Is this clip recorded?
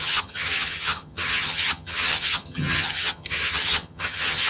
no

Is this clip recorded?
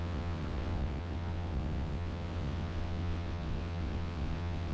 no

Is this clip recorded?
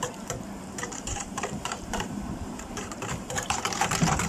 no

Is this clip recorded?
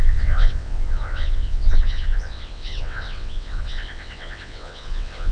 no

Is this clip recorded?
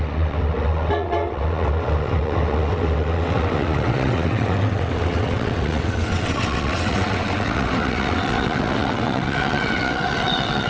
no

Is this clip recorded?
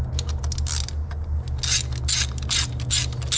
yes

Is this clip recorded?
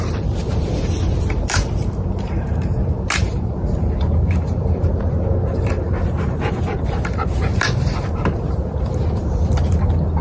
no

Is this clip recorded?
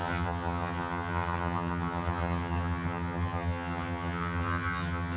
no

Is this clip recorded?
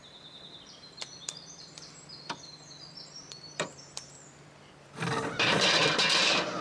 no